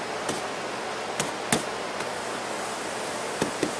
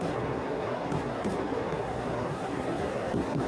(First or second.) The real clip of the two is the first